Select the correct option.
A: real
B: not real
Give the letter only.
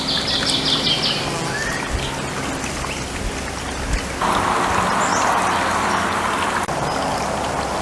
A